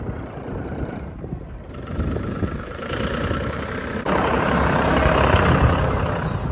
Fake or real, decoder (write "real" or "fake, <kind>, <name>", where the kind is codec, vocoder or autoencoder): fake, vocoder, BigVGAN v2